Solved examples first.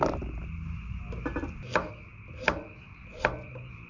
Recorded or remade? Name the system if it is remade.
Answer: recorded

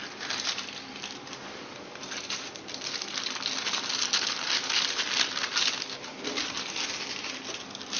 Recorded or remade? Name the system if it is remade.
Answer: recorded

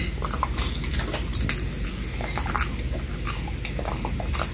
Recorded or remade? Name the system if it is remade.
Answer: recorded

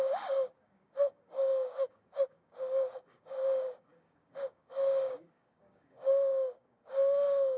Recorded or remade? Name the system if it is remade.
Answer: remade, codec, DAC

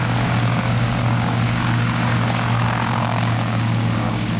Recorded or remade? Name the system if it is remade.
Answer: remade, codec, DAC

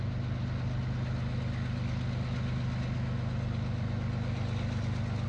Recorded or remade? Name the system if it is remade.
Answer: recorded